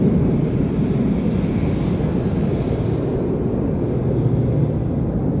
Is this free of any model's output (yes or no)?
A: yes